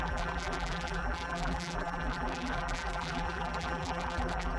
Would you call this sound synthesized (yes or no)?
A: yes